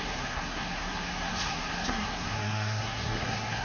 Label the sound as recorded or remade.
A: remade